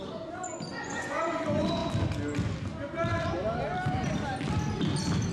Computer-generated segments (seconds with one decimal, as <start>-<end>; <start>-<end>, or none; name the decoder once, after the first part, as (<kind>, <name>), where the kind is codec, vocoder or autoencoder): 0.7-1.2 (vocoder, Vocos)